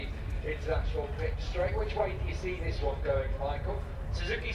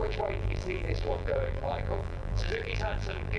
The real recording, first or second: first